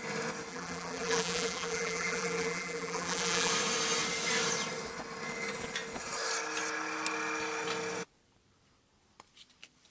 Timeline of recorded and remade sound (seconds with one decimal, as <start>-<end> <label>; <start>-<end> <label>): 0.0-0.5 recorded; 0.5-3.5 remade; 3.5-9.9 recorded